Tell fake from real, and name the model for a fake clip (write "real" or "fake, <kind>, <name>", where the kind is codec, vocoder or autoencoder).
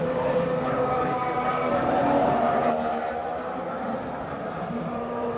fake, vocoder, BigVGAN v2